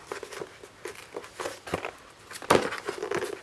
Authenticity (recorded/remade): recorded